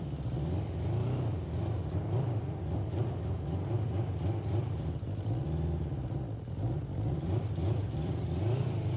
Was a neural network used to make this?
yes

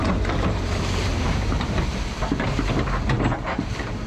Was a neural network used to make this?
yes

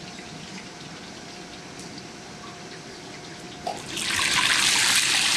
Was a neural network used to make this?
yes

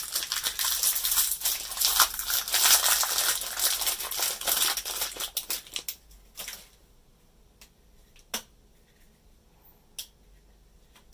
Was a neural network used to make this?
no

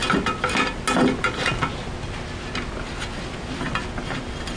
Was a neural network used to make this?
no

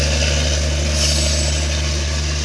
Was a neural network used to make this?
no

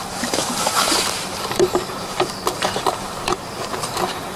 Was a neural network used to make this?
yes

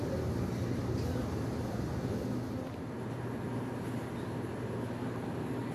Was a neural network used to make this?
no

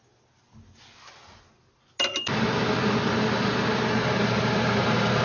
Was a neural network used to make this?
no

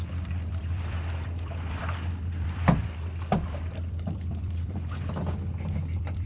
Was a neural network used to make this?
yes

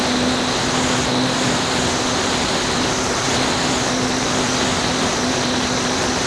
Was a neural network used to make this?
no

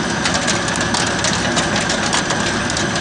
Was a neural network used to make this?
no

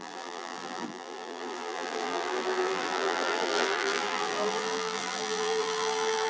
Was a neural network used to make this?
yes